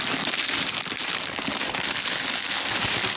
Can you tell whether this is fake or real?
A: real